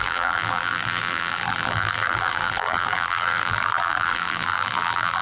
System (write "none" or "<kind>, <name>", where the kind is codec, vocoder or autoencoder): vocoder, BigVGAN v2